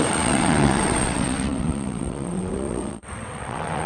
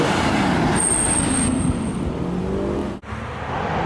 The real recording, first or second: second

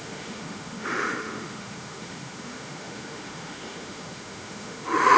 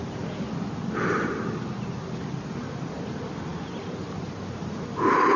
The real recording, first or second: second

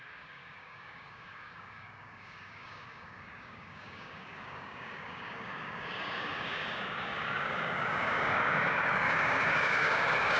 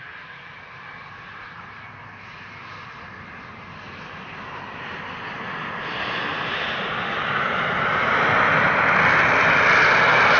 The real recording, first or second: second